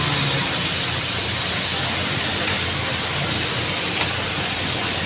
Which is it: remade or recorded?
recorded